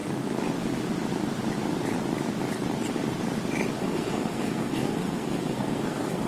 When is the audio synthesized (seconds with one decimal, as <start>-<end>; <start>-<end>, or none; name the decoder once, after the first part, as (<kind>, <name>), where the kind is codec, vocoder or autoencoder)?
3.8-6.3 (codec, SNAC)